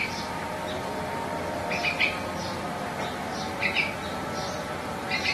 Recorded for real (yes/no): yes